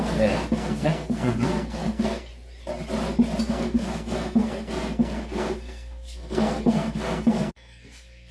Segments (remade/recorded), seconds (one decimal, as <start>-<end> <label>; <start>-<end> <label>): 0.0-2.3 remade; 2.3-3.5 recorded; 3.5-8.3 remade

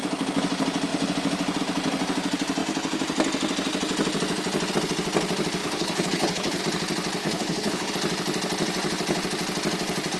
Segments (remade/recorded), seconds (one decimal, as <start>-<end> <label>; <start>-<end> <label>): 0.0-5.6 recorded; 5.6-6.6 remade; 6.6-7.2 recorded; 7.2-7.9 remade; 7.9-10.2 recorded